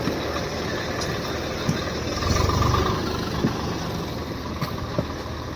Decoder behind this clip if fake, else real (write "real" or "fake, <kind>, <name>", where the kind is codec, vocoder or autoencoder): real